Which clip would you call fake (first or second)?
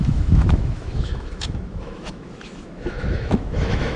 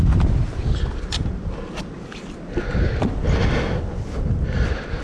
first